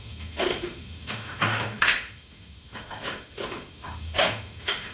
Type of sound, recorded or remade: remade